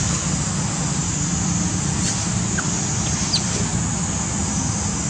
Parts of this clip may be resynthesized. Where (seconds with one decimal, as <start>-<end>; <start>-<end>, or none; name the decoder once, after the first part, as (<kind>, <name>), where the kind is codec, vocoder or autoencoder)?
none